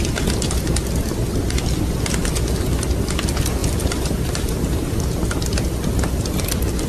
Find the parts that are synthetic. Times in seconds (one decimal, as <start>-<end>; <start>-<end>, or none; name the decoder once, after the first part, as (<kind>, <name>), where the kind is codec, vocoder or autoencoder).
3.6-5.0 (vocoder, BigVGAN v2)